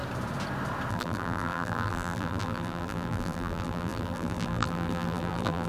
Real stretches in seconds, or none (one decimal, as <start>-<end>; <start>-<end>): 0.0-0.9